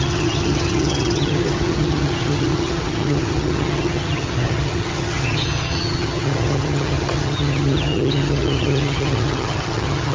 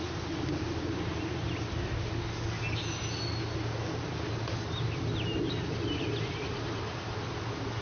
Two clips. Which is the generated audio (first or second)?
first